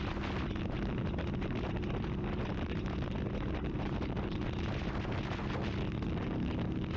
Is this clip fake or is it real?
real